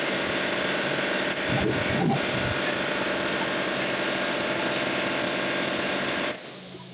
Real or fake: real